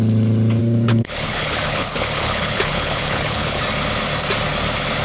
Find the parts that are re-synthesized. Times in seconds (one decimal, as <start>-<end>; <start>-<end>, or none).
0.6-3.6

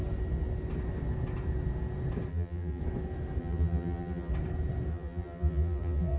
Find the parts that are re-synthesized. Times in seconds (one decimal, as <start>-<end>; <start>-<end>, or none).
2.3-2.8; 3.4-4.3; 4.9-6.2